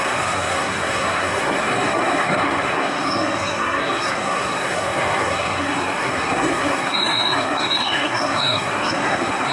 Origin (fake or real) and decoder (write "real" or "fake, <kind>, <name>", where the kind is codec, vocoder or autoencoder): fake, codec, SNAC